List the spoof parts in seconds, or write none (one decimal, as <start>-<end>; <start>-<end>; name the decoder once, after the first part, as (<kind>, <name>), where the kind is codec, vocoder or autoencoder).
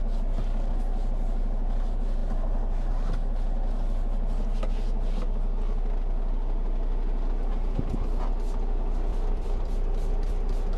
9.1-10.3 (vocoder, BigVGAN v2)